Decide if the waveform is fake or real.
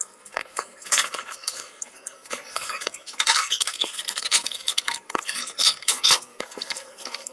fake